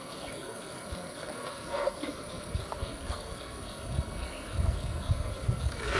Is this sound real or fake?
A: fake